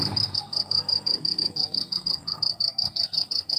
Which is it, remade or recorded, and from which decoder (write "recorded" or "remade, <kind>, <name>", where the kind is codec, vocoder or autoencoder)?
remade, codec, SNAC